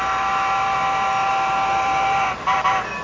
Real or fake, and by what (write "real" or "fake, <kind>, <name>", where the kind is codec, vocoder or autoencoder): real